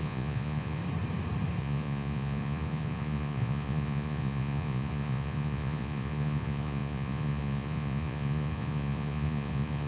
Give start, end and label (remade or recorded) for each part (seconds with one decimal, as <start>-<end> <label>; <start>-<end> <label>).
0.0-0.8 remade; 0.8-1.6 recorded; 1.6-9.9 remade